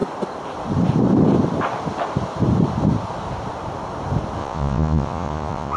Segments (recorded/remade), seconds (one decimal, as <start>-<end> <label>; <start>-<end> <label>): 0.0-4.4 recorded; 4.4-5.8 remade